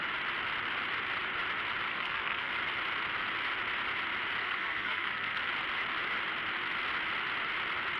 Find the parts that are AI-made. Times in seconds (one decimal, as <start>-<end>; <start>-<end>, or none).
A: 1.9-2.5; 4.4-5.5